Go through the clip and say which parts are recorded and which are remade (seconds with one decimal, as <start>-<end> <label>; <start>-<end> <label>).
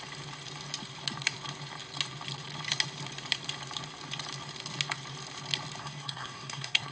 0.0-5.8 recorded; 5.8-6.9 remade